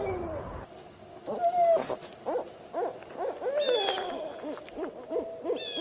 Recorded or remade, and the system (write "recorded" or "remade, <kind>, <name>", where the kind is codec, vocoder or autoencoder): recorded